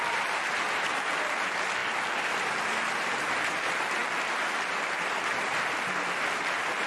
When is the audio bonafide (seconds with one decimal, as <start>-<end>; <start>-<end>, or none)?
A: 0.0-6.9